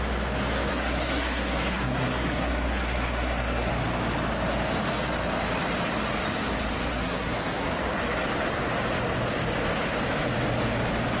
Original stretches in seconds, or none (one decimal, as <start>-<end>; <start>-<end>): 0.0-0.7; 3.7-6.9; 7.7-11.2